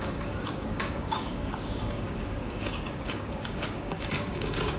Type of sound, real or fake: fake